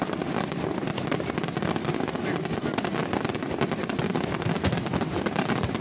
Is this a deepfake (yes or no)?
no